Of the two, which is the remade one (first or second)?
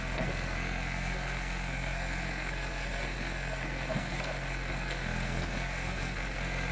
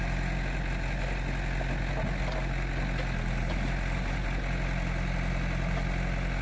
first